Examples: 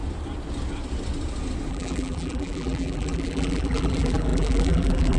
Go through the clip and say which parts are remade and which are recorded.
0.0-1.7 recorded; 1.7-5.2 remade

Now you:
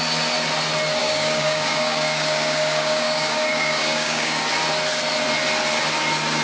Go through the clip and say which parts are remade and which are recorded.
0.0-1.0 recorded; 1.0-4.4 remade; 4.4-6.4 recorded

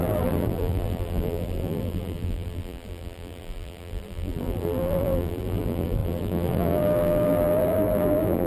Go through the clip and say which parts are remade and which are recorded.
0.0-8.5 remade

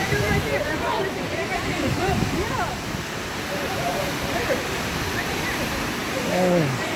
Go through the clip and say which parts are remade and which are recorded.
0.0-1.0 remade; 1.0-1.5 recorded; 1.5-4.4 remade; 4.4-7.0 recorded